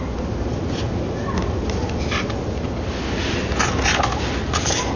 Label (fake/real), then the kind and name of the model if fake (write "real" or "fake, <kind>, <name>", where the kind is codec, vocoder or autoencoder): real